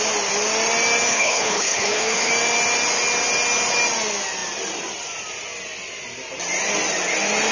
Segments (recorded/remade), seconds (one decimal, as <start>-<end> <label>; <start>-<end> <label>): 0.0-1.1 recorded; 1.1-2.3 remade; 2.3-7.5 recorded